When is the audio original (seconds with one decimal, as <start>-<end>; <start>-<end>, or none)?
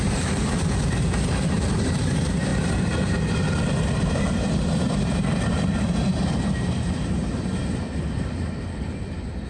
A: 2.5-3.8